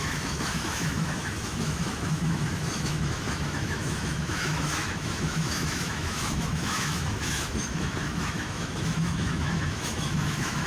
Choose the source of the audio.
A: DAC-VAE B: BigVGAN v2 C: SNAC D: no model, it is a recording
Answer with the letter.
A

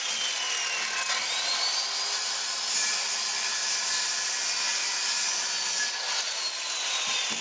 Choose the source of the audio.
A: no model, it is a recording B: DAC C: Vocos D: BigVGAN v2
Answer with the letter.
A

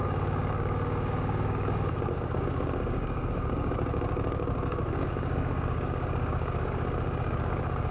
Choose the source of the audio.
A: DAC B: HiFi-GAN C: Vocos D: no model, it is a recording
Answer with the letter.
A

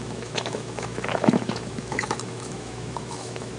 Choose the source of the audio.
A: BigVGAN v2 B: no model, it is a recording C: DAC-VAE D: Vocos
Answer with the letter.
C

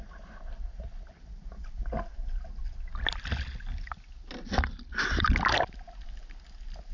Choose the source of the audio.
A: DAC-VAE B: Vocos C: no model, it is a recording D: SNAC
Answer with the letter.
C